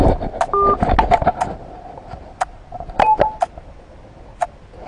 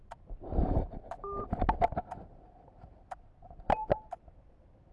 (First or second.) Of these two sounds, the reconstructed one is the second